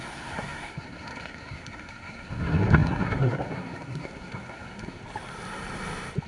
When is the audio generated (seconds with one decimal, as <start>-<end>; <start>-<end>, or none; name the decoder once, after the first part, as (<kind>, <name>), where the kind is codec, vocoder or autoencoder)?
0.0-5.0 (codec, SNAC)